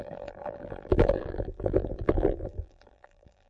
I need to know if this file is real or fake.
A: fake